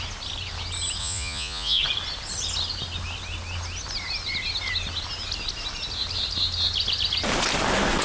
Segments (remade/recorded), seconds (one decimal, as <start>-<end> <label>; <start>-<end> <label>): 0.0-1.0 recorded; 1.0-1.8 remade; 1.8-8.0 recorded